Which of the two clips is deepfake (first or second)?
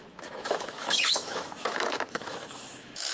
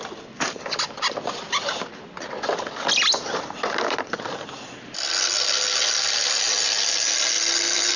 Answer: first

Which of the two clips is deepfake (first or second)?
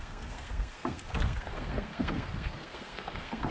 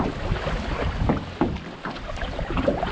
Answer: first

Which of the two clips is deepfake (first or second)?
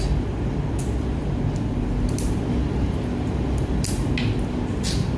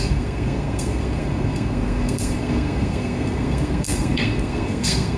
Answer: second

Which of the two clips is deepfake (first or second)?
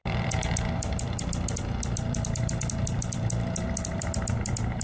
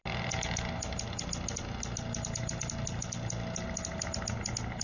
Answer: first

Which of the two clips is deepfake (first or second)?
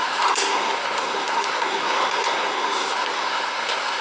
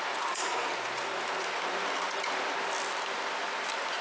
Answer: first